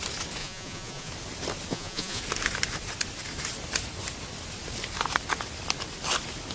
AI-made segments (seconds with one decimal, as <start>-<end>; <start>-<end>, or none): 0.4-1.1; 1.7-2.2